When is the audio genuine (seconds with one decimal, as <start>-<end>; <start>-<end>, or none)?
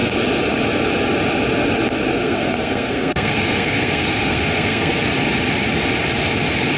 0.0-2.1; 4.9-6.8